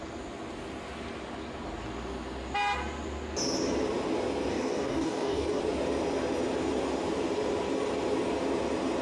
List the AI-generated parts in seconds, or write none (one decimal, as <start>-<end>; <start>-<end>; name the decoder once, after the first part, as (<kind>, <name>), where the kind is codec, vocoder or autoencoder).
4.5-5.6 (codec, DAC)